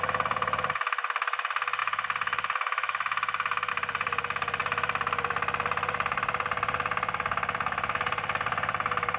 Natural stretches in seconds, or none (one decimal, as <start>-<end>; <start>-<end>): 1.8-3.7